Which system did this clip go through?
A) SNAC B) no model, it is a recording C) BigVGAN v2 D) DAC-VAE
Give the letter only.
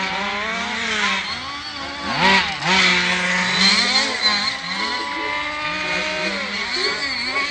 B